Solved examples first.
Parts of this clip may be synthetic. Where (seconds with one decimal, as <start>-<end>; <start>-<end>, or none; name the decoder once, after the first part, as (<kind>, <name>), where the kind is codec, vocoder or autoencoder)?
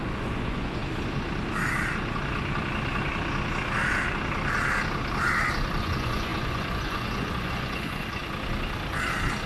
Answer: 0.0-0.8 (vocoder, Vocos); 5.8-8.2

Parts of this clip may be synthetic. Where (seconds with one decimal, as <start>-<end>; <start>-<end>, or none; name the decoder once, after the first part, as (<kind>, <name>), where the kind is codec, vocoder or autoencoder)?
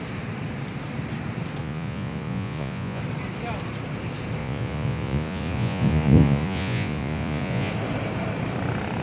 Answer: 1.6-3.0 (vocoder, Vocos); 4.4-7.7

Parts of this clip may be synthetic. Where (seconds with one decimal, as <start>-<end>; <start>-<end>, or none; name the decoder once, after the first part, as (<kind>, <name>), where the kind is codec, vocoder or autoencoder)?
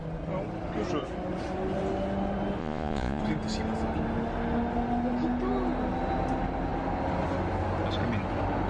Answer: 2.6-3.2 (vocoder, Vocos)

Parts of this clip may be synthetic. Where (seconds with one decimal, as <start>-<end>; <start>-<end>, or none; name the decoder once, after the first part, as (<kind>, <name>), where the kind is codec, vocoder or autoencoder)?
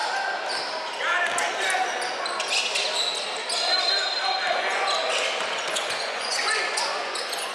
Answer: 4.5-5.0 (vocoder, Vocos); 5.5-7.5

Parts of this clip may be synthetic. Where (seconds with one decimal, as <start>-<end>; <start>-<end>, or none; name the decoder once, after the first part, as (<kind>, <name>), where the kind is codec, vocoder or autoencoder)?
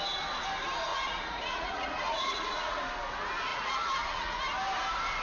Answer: 0.9-2.8 (vocoder, Vocos); 3.5-4.4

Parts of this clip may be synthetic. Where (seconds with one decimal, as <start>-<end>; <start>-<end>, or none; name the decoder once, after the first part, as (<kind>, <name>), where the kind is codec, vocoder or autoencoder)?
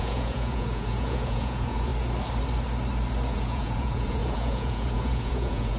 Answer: 0.0-1.9 (vocoder, Vocos); 3.3-5.8